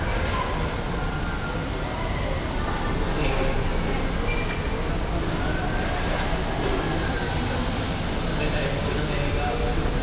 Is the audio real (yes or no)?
yes